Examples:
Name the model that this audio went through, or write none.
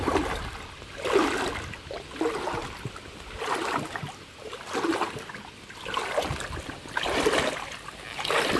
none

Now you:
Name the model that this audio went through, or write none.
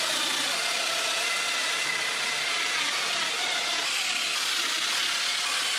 none